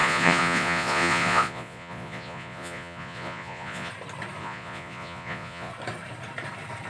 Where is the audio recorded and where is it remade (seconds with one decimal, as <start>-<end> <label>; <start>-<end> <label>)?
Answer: 0.0-3.9 remade; 3.9-4.4 recorded; 4.4-5.7 remade; 5.7-6.9 recorded